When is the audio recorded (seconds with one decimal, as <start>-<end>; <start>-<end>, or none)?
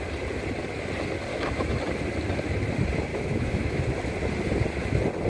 0.0-1.3; 1.8-3.1; 3.8-5.3